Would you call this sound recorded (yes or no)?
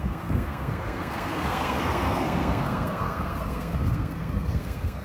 no